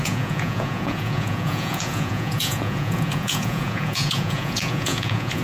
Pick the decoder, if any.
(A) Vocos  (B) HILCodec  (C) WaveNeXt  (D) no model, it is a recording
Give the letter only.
A